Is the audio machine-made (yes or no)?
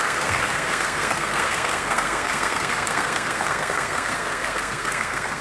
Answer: yes